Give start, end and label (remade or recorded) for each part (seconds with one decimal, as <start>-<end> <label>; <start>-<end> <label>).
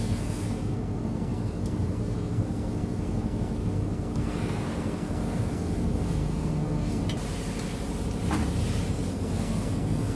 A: 0.0-7.0 remade; 7.0-8.9 recorded; 8.9-10.2 remade